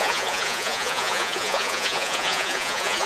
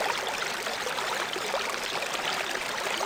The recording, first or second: second